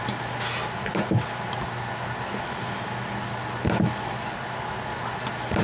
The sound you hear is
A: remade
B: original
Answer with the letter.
B